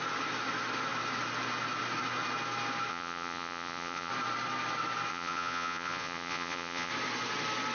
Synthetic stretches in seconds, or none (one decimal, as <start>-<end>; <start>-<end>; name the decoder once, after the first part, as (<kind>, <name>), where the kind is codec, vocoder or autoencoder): 2.9-4.1 (vocoder, Vocos); 5.1-6.9